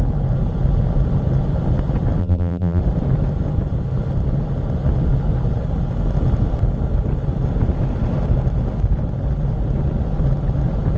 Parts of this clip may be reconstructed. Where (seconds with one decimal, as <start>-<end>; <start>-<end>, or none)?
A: 2.2-2.8